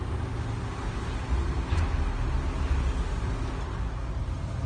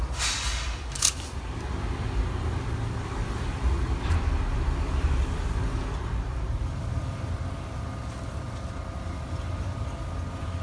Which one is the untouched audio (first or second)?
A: first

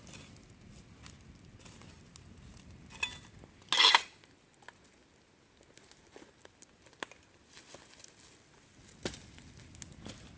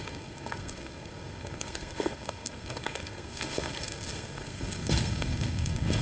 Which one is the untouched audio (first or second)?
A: first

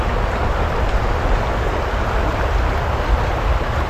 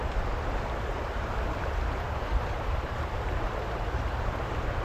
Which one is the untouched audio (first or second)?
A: first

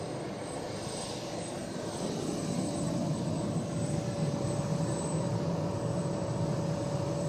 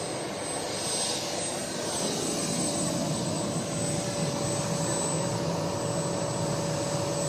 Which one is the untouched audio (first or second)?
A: second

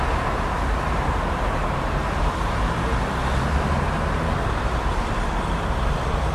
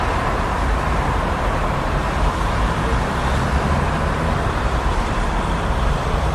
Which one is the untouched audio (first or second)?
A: first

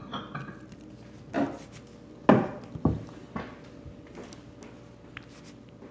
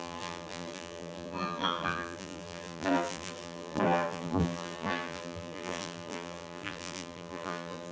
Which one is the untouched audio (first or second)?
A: first